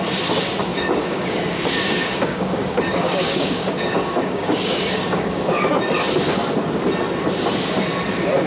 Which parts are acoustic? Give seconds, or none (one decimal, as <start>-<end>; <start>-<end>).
0.0-0.7; 5.4-8.5